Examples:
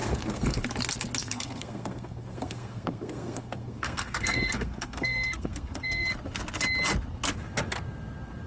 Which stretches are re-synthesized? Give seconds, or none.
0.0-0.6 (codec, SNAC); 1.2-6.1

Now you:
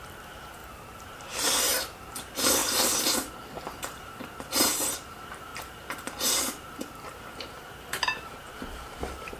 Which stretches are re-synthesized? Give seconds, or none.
0.0-2.6 (vocoder, BigVGAN v2); 3.6-9.4

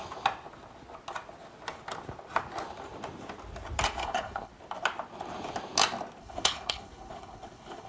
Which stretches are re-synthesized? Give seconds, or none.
4.0-4.5 (codec, HILCodec); 6.2-7.9

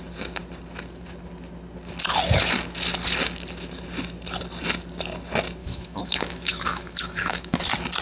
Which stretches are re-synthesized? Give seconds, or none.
5.6-7.6 (autoencoder, DAC-VAE)

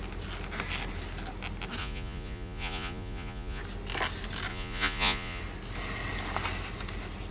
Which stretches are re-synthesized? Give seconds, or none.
1.8-3.6 (vocoder, Vocos); 4.5-5.4

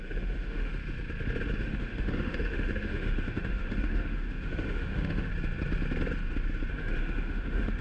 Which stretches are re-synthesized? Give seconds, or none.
0.0-0.7 (autoencoder, DAC-VAE); 1.6-5.3; 6.7-7.8